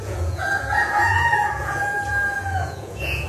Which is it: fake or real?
fake